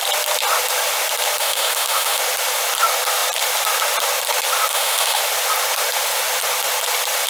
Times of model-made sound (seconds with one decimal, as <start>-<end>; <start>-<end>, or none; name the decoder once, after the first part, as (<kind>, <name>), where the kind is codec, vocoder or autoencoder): 1.4-2.2 (autoencoder, DAC-VAE); 4.7-5.2